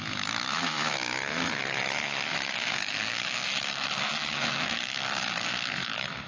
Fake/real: fake